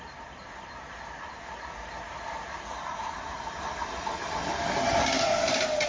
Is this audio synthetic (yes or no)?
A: no